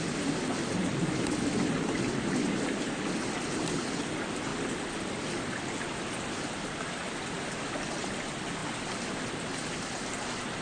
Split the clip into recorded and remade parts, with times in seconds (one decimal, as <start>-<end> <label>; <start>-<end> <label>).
0.0-10.6 recorded